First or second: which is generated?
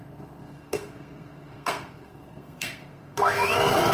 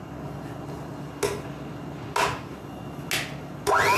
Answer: first